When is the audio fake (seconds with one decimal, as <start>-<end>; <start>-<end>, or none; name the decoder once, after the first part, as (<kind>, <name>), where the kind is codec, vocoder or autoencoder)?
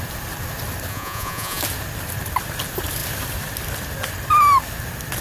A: 0.9-1.6 (vocoder, Vocos)